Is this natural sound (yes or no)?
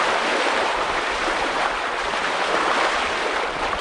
no